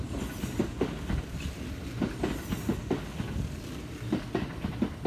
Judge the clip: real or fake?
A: real